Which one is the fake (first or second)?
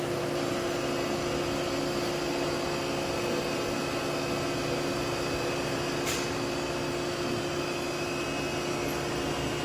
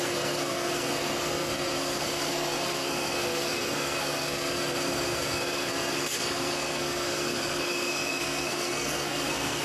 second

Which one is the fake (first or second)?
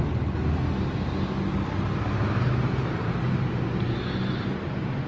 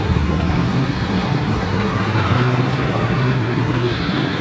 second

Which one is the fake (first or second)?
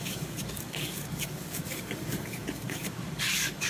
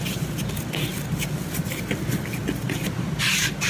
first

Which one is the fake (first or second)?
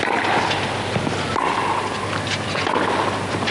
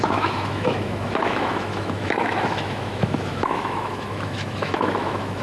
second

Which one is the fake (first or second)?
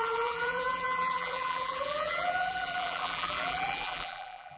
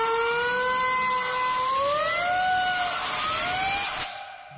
first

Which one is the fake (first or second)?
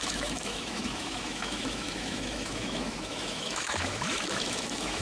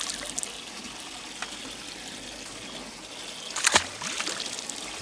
first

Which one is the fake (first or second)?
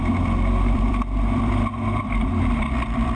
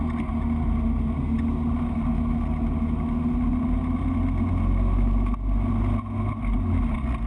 first